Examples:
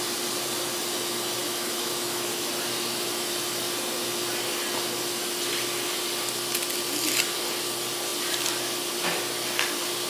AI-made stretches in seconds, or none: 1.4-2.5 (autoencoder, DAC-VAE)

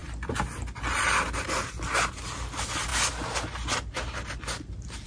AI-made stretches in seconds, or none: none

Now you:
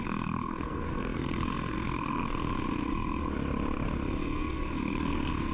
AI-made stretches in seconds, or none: 0.0-2.5 (codec, SNAC); 4.2-5.5